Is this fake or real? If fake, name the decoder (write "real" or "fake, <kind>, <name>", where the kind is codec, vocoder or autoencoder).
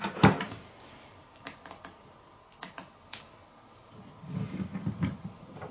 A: real